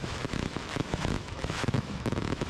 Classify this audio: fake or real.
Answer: fake